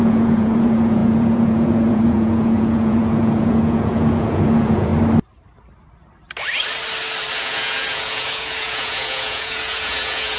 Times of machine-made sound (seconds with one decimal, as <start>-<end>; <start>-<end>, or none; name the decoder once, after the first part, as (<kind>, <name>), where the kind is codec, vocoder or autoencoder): 0.0-4.9 (vocoder, Vocos); 7.4-10.4